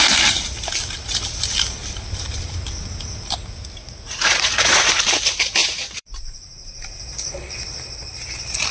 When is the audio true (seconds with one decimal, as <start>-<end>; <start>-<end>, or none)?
0.0-3.8; 4.9-5.6; 7.0-8.7